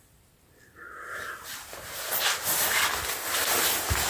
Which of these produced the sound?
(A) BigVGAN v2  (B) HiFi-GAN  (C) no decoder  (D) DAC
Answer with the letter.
C